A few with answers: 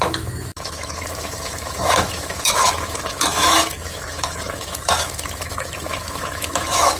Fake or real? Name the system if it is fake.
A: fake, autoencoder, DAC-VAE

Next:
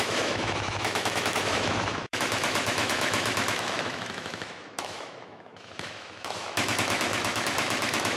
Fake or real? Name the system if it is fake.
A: fake, autoencoder, DAC-VAE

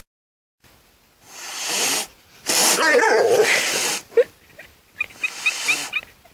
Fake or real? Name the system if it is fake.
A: real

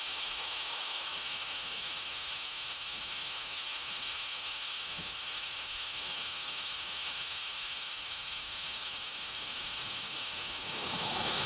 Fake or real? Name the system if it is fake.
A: fake, autoencoder, DAC-VAE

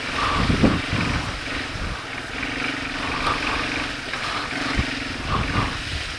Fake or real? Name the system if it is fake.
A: real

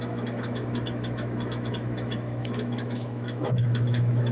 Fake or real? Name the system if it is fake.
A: fake, autoencoder, DAC-VAE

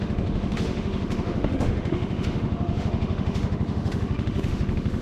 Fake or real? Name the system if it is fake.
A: fake, autoencoder, DAC-VAE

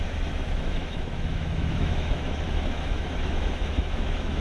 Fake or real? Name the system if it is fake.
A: fake, autoencoder, DAC-VAE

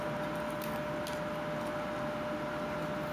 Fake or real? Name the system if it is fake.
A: real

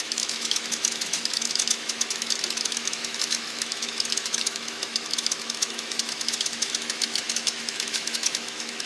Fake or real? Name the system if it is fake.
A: fake, autoencoder, DAC-VAE